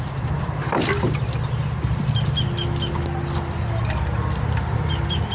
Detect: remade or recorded remade